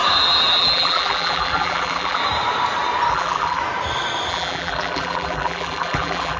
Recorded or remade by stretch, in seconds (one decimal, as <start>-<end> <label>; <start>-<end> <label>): 0.0-0.6 recorded; 0.6-2.2 remade; 2.2-3.1 recorded; 3.1-3.6 remade; 3.6-4.3 recorded; 4.3-6.4 remade